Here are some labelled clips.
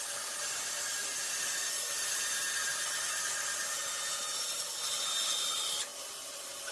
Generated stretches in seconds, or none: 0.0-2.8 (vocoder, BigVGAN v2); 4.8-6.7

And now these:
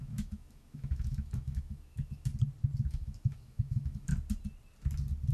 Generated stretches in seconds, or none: 0.0-2.3 (autoencoder, DAC-VAE); 2.9-4.1

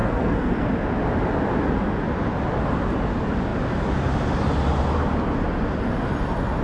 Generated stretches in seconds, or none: 0.0-0.7 (codec, SNAC)

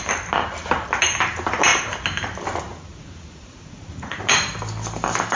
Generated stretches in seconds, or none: 2.7-4.2 (vocoder, Vocos)

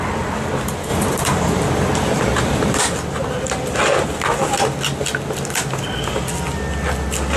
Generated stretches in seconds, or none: 0.9-2.8 (vocoder, BigVGAN v2)

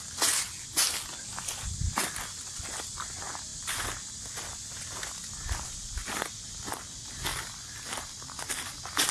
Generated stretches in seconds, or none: none

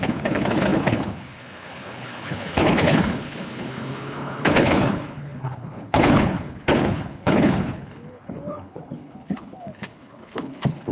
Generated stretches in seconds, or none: 0.0-10.9 (codec, HILCodec)